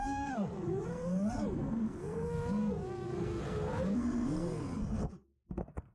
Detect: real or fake fake